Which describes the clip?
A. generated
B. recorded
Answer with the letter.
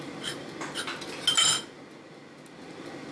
B